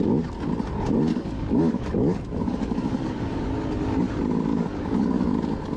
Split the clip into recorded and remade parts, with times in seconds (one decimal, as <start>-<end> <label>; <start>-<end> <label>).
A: 0.0-1.1 recorded; 1.1-3.4 remade; 3.4-4.5 recorded; 4.5-5.3 remade; 5.3-5.8 recorded